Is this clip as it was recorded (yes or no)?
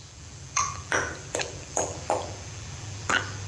no